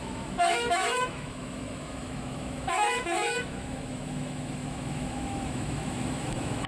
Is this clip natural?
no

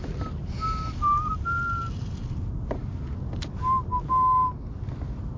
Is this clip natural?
yes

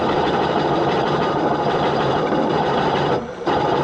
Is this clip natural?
no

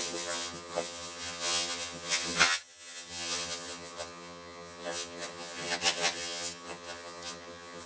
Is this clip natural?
no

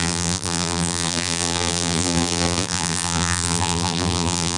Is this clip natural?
no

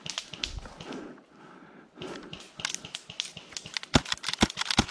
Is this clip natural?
yes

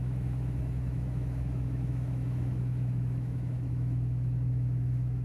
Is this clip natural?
no